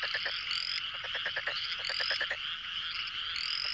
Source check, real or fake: real